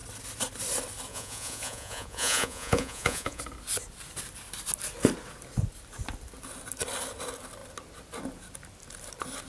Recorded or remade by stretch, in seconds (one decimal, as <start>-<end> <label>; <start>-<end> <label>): 0.0-1.1 recorded; 1.1-3.4 remade; 3.4-9.5 recorded